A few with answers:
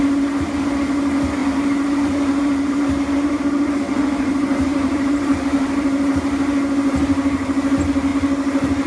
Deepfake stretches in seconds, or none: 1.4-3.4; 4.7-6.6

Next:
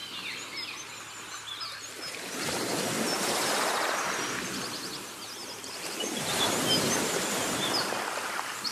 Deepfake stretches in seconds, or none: 5.4-6.5

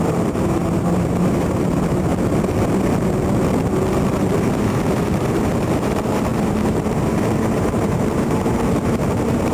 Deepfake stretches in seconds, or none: 0.0-2.1; 4.4-9.5

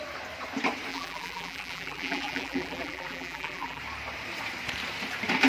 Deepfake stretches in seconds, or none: 0.9-3.8

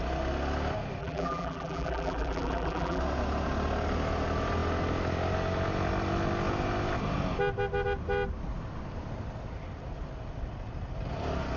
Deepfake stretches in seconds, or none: 1.0-3.0

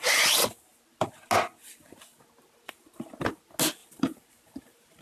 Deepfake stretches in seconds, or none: 3.8-5.0